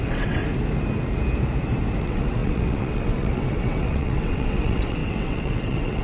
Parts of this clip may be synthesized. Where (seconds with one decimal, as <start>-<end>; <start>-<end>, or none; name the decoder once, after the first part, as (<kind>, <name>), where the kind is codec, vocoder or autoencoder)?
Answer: 0.0-0.4 (vocoder, WaveNeXt); 2.0-6.0